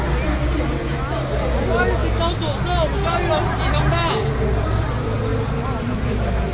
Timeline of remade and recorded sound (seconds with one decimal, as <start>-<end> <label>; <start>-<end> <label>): 0.0-6.5 recorded